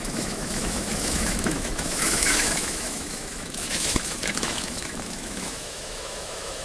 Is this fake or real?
fake